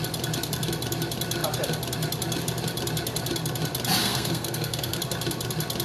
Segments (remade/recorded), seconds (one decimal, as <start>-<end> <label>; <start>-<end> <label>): 0.0-4.0 recorded; 4.0-5.0 remade; 5.0-5.8 recorded